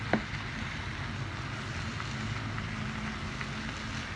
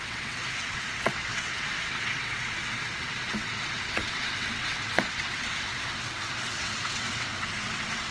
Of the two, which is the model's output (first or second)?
second